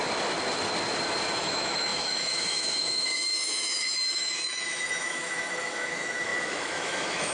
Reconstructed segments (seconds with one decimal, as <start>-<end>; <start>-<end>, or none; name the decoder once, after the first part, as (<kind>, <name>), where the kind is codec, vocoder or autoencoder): 1.4-7.3 (autoencoder, DAC-VAE)